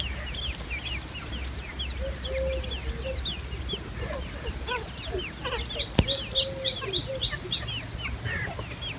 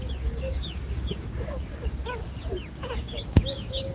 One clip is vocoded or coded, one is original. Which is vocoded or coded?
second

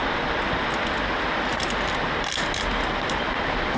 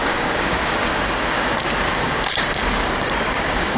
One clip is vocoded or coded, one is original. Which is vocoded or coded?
second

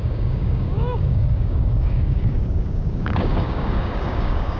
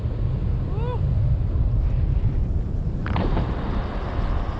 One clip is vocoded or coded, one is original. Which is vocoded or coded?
first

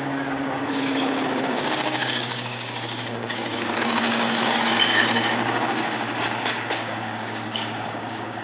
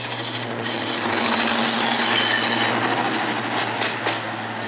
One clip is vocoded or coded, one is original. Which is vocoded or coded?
first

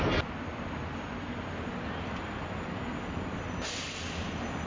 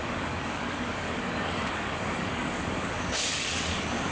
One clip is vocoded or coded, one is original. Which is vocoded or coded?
second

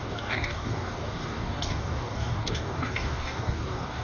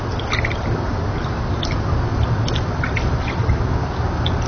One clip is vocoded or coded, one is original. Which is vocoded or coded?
first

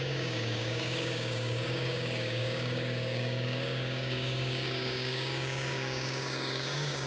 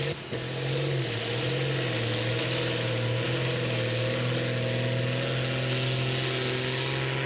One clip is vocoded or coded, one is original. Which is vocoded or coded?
first